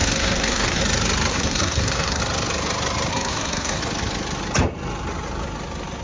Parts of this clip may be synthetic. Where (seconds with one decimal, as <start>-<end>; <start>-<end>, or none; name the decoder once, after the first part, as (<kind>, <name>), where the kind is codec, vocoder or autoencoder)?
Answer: 0.0-0.8 (codec, SNAC); 1.3-2.2; 3.1-3.8